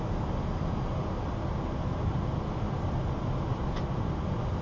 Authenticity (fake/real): real